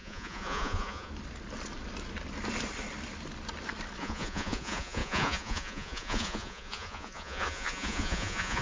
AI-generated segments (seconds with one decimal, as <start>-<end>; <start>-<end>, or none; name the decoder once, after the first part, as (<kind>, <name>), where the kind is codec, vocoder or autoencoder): 0.0-1.1 (vocoder, Vocos); 4.0-8.6